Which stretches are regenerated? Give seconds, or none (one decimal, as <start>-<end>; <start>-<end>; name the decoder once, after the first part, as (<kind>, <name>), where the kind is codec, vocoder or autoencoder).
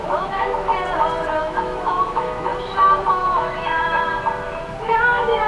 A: 0.0-0.7 (autoencoder, DAC-VAE); 1.4-2.5; 3.1-4.1; 4.8-5.5